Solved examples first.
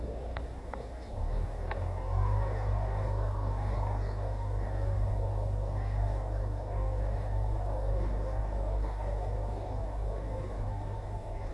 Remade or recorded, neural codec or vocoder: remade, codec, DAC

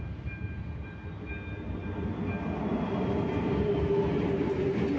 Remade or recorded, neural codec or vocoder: recorded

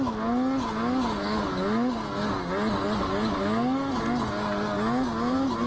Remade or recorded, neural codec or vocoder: recorded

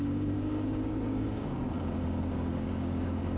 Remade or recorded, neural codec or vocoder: remade, codec, DAC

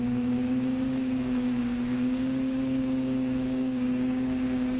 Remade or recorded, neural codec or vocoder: remade, codec, DAC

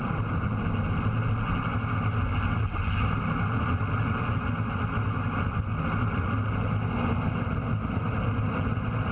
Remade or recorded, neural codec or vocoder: recorded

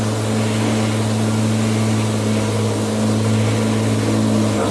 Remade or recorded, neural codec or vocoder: recorded